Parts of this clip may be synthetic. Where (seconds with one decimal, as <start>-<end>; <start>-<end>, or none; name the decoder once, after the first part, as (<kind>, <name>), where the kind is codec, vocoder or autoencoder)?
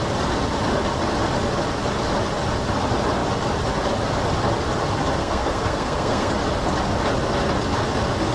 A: 5.2-6.3 (codec, SNAC)